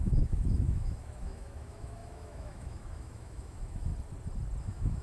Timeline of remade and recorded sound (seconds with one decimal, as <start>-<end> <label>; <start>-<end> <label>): 0.0-3.9 remade; 3.9-4.6 recorded; 4.6-5.0 remade